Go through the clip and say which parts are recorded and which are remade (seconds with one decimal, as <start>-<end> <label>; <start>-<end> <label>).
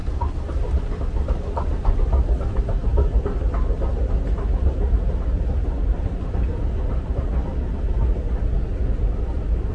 0.0-9.7 recorded